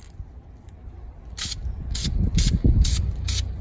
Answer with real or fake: real